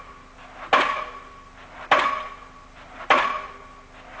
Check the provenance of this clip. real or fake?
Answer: real